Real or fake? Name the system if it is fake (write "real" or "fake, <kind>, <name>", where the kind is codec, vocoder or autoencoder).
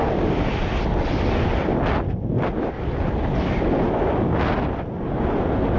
real